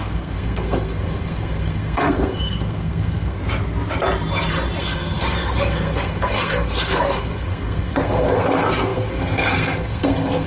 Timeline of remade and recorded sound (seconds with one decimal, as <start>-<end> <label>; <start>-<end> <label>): 0.0-3.4 remade; 3.4-4.8 recorded; 4.8-10.5 remade